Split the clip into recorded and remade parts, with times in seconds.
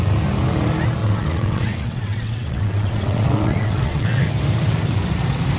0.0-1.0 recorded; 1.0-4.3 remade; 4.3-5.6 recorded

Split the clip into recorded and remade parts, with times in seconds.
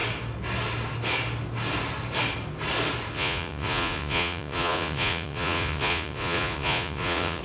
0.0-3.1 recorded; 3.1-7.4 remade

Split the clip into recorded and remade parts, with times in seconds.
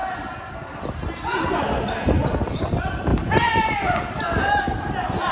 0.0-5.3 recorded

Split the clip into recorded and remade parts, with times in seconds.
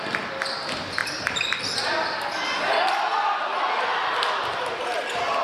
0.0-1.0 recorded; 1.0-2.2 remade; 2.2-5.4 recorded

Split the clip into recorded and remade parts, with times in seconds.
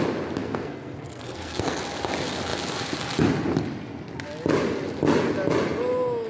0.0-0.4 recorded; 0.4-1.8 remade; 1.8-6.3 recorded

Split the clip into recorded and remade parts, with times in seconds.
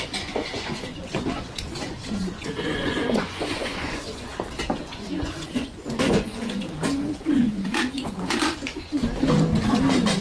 0.0-4.3 remade; 4.3-4.8 recorded; 4.8-9.0 remade; 9.0-10.2 recorded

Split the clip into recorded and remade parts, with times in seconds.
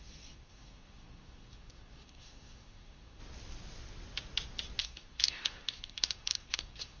0.0-3.2 remade; 3.2-4.8 recorded; 4.8-7.0 remade